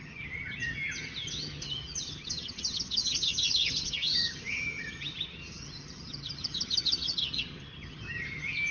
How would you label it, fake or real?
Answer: fake